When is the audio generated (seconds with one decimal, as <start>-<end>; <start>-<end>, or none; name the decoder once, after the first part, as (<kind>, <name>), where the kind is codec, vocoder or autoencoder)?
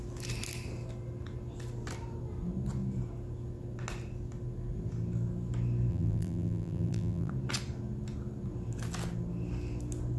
5.9-7.3 (vocoder, BigVGAN v2)